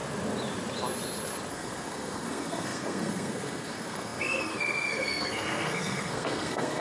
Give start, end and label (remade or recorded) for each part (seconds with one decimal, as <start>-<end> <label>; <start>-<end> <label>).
0.0-1.5 recorded; 1.5-6.8 remade